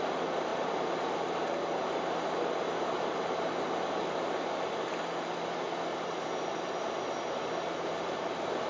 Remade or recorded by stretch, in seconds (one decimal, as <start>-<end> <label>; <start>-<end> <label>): 0.0-0.5 recorded; 0.5-1.1 remade; 1.1-5.9 recorded; 5.9-8.7 remade